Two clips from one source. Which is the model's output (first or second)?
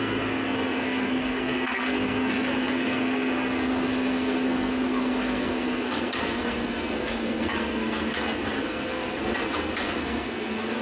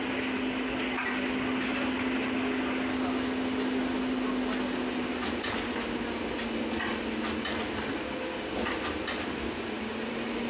first